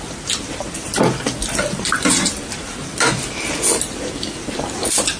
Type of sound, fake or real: real